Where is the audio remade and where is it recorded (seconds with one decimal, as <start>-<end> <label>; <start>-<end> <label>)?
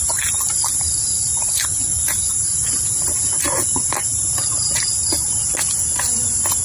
0.0-6.6 remade